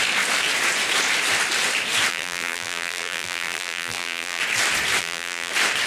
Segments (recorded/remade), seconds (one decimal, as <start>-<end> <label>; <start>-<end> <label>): 0.0-2.1 recorded; 2.1-4.4 remade; 4.4-5.0 recorded; 5.0-5.5 remade; 5.5-5.9 recorded